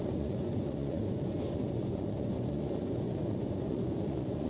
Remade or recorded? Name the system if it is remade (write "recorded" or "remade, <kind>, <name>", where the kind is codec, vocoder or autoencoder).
remade, vocoder, Vocos